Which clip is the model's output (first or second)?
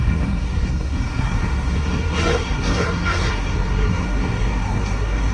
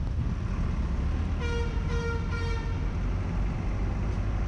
first